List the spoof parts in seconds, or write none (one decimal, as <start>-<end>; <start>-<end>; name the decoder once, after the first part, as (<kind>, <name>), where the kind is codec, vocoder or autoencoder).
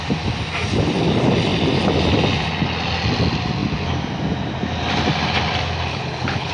5.9-6.5 (codec, HILCodec)